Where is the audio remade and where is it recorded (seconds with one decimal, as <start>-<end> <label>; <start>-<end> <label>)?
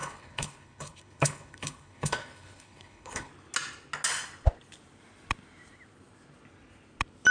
0.0-3.3 remade; 3.3-7.3 recorded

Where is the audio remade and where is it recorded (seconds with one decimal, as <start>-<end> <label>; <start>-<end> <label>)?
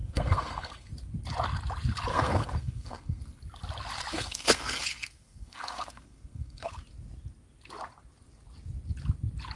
0.0-0.9 remade; 0.9-2.1 recorded; 2.1-3.2 remade; 3.2-4.1 recorded; 4.1-6.7 remade; 6.7-9.6 recorded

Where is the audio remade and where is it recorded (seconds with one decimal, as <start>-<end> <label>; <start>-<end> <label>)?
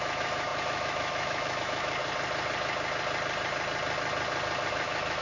0.0-2.0 remade; 2.0-4.7 recorded; 4.7-5.2 remade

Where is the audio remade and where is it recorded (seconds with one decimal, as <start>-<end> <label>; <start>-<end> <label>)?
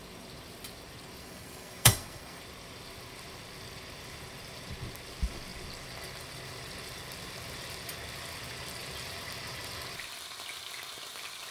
0.0-1.2 recorded; 1.2-2.4 remade; 2.4-11.5 recorded